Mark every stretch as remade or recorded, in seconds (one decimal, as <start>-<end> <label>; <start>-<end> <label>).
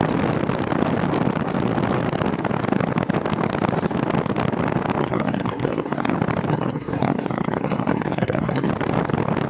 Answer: 0.0-5.0 recorded; 5.0-6.1 remade; 6.1-6.5 recorded; 6.5-8.7 remade; 8.7-9.5 recorded